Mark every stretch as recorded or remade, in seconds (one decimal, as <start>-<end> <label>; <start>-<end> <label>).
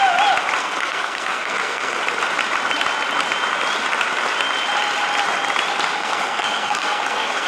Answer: 0.0-0.6 recorded; 0.6-2.0 remade; 2.0-6.0 recorded; 6.0-7.5 remade